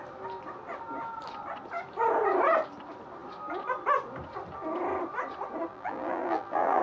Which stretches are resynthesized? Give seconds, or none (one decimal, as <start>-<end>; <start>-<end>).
5.7-6.8